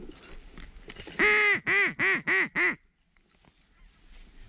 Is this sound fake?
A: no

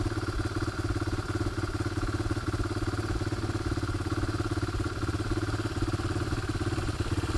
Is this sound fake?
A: no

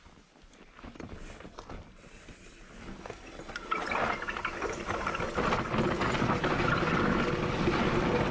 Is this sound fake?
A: no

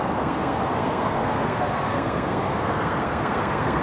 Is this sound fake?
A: yes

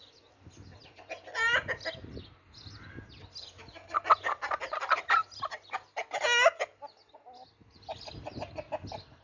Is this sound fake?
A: no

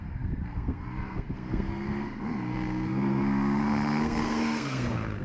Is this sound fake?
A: yes